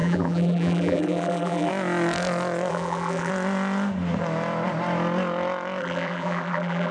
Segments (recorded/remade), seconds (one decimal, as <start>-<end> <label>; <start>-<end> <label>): 0.0-1.7 remade; 1.7-2.7 recorded; 2.7-3.3 remade; 3.3-5.8 recorded; 5.8-6.9 remade

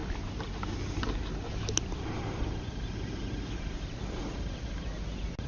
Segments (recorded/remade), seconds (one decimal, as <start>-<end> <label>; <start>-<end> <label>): 0.0-5.5 recorded

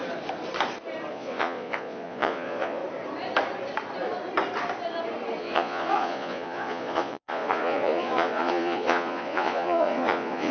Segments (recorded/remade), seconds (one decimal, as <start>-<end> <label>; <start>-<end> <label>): 0.0-1.1 recorded; 1.1-2.8 remade; 2.8-5.4 recorded; 5.4-10.5 remade

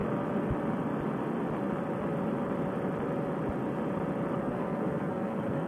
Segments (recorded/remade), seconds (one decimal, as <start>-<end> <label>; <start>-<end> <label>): 0.0-4.4 recorded; 4.4-5.7 remade

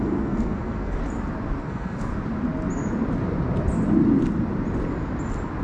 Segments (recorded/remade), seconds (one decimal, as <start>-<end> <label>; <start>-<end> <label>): 0.0-1.0 remade; 1.0-1.6 recorded; 1.6-2.1 remade; 2.1-5.6 recorded